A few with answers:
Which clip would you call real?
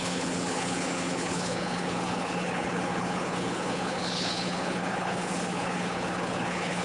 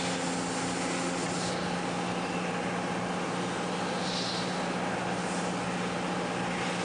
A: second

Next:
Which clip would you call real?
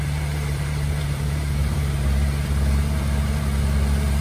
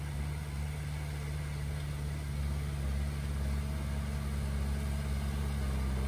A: second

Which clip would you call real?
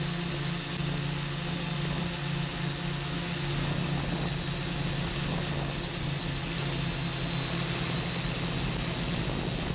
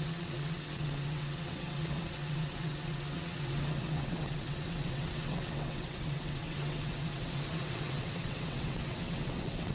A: first